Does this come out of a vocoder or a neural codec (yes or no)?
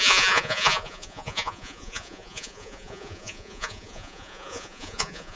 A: yes